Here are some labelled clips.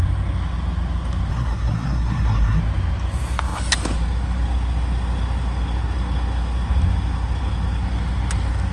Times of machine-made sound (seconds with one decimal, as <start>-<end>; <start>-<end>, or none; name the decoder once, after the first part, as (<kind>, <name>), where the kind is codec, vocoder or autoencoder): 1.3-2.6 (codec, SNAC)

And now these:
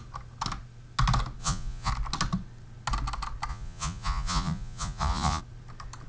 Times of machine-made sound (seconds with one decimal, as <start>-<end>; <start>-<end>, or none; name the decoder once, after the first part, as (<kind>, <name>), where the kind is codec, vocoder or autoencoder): 1.4-1.9 (vocoder, Vocos); 3.5-5.4

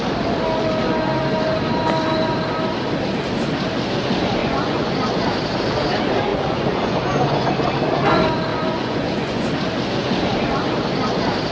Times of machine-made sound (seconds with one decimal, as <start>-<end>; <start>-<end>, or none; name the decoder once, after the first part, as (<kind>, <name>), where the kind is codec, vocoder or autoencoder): 4.4-4.9 (vocoder, Vocos); 6.3-7.5; 8.5-9.5

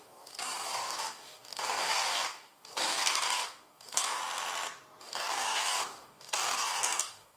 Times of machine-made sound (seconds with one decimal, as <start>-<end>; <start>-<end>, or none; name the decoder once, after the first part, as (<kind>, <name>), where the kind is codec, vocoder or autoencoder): 0.0-4.2 (codec, DAC); 5.0-7.4